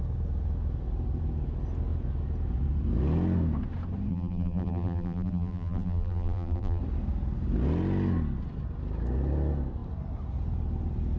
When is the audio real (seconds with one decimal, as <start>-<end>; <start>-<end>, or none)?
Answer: 0.0-4.1; 6.8-11.2